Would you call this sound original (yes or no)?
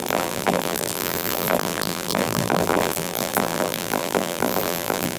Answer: no